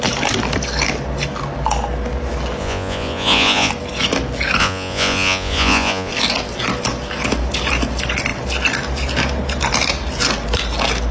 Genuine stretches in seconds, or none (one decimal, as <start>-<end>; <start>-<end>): 0.0-2.6; 3.7-4.6; 6.1-11.1